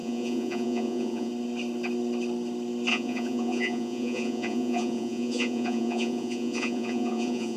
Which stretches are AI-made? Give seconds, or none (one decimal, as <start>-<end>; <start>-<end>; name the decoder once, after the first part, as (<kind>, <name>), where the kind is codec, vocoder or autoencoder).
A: 0.0-1.3 (vocoder, Vocos); 2.9-7.6